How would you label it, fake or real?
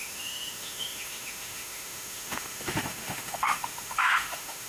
fake